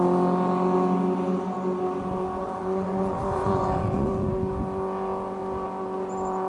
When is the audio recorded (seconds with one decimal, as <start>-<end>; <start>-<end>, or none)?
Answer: 0.0-2.4; 4.5-6.5